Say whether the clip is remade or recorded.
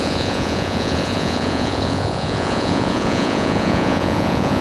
remade